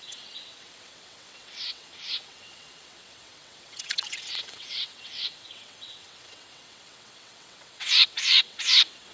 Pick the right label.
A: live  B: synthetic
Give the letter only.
B